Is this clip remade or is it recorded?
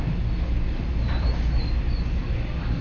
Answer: recorded